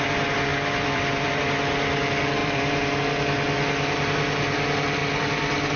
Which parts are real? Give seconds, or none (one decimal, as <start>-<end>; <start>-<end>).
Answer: 0.0-0.5; 1.4-2.4; 3.0-5.0